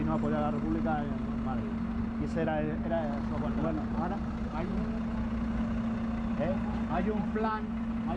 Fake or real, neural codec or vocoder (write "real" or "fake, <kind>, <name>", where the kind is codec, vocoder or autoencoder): real